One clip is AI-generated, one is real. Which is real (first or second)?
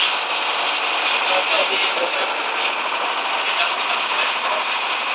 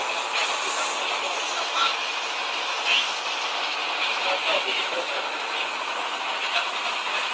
first